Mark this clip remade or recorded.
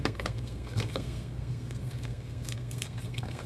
remade